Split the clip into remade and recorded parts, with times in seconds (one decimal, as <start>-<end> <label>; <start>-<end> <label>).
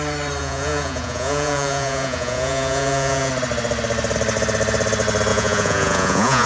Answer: 0.0-0.4 recorded; 0.4-3.3 remade; 3.3-5.3 recorded; 5.3-6.5 remade